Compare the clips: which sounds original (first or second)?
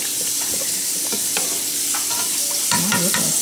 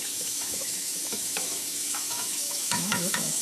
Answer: first